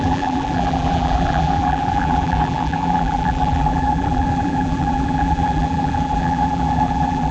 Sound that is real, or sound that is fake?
fake